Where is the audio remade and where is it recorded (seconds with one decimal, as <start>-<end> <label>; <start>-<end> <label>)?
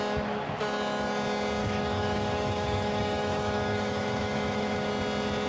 0.0-1.6 recorded; 1.6-4.9 remade; 4.9-5.5 recorded